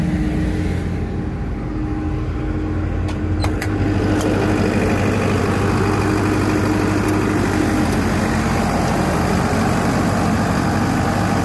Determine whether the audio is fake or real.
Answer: real